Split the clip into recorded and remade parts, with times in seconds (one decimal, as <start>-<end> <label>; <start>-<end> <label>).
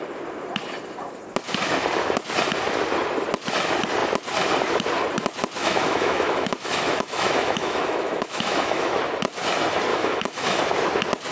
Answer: 0.0-5.6 recorded; 5.6-9.0 remade; 9.0-9.9 recorded; 9.9-10.6 remade; 10.6-11.3 recorded